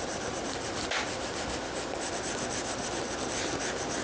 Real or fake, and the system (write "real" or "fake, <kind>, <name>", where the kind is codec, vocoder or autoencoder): real